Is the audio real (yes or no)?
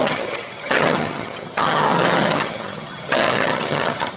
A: no